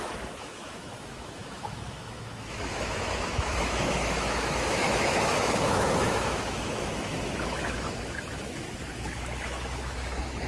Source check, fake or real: fake